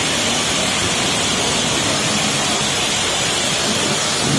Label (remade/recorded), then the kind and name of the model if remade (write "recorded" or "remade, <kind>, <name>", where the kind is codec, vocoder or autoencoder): recorded